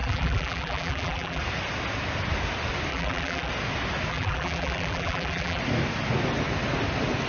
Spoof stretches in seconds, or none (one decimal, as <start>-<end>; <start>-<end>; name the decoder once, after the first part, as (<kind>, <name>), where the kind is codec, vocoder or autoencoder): 0.0-1.4 (vocoder, BigVGAN v2); 2.9-3.5; 4.1-5.6